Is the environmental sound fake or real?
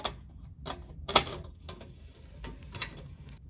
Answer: real